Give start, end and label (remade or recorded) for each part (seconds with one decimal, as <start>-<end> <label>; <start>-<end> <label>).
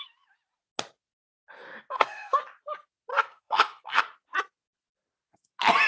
0.0-1.9 recorded; 1.9-2.4 remade; 2.4-3.1 recorded; 3.1-4.0 remade; 4.0-5.9 recorded